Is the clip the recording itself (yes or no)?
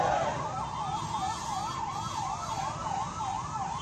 yes